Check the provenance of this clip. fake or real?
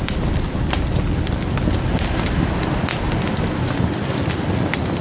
real